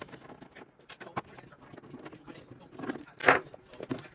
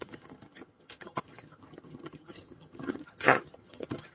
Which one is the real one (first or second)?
first